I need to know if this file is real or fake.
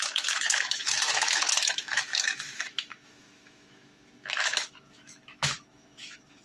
fake